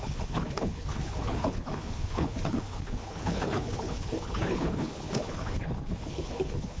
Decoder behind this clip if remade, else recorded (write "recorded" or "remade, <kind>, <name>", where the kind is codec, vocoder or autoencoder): remade, codec, HILCodec